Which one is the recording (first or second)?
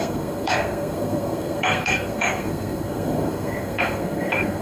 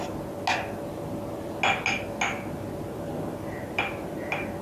second